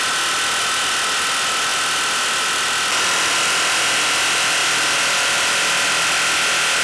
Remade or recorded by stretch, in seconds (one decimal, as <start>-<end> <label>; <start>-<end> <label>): 0.0-6.8 recorded